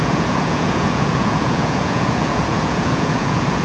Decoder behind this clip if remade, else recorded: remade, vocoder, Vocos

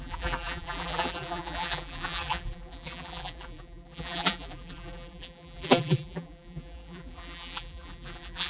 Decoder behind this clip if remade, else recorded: remade, vocoder, BigVGAN v2